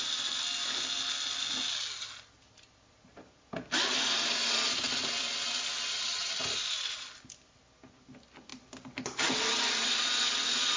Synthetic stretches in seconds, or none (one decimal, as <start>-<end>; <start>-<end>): 5.9-6.4